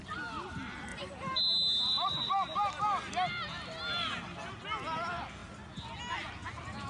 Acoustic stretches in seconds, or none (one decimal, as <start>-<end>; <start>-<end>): 0.0-0.9; 1.4-6.9